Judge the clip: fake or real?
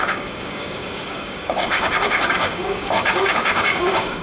fake